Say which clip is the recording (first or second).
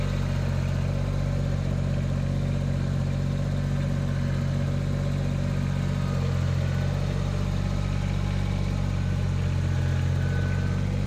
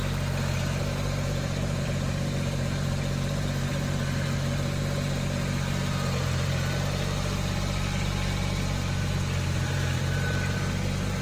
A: first